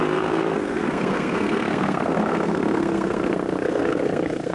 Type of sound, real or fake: fake